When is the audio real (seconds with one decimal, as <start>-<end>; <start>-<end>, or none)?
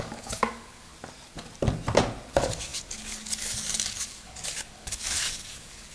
0.9-2.3